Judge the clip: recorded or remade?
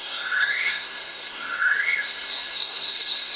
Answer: remade